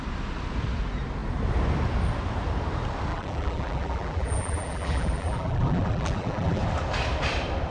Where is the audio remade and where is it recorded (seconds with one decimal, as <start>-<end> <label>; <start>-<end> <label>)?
0.0-3.1 recorded; 3.1-6.6 remade; 6.6-7.7 recorded